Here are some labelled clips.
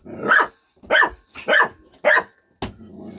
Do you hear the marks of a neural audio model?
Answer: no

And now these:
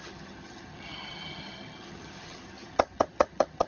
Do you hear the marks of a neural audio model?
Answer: yes